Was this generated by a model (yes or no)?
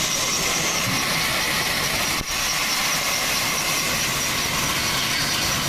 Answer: no